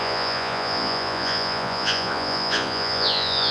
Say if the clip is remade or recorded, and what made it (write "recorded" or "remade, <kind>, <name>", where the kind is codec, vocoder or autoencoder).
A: remade, vocoder, Vocos